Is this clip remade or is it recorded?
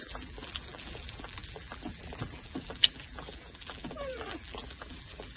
remade